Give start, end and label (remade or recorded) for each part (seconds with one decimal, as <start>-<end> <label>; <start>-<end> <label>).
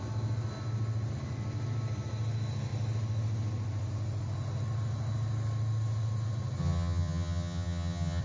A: 0.0-6.6 recorded; 6.6-8.2 remade